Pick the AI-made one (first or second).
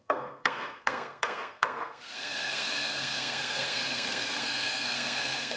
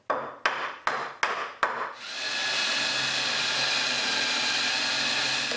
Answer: first